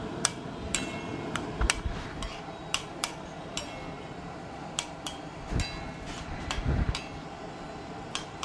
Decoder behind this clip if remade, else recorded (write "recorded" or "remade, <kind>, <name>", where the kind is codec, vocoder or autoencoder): recorded